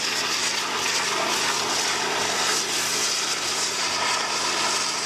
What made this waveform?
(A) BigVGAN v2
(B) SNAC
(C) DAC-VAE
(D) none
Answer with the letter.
D